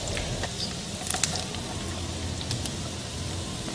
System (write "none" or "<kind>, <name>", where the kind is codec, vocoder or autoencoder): none